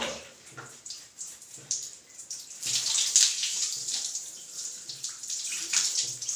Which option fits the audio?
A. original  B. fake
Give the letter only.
B